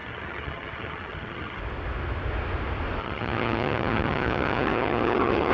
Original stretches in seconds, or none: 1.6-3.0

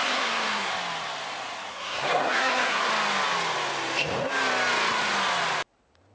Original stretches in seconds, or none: 0.7-1.7; 2.9-6.1

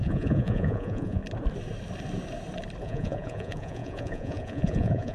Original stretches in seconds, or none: 1.2-2.8

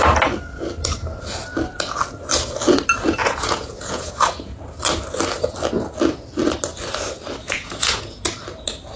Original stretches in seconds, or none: 0.0-3.2; 4.6-7.4; 8.2-9.0

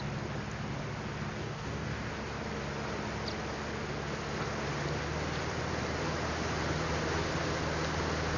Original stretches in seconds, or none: 0.0-1.4; 2.1-8.4